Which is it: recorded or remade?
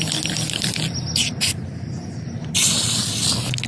recorded